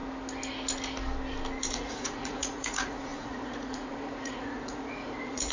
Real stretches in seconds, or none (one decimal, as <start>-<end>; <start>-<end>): 0.0-1.7